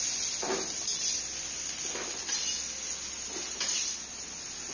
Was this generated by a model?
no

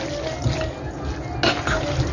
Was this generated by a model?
no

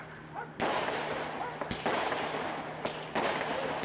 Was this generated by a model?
no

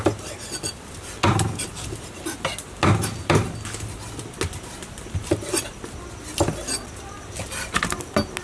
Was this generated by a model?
no